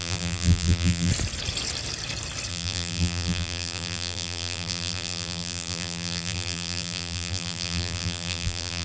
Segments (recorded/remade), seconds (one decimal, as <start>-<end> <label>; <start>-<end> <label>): 0.0-1.1 remade; 1.1-2.5 recorded; 2.5-8.8 remade